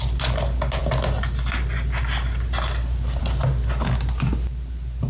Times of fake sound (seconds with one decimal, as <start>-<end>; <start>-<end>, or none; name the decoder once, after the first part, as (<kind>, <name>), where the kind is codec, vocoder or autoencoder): none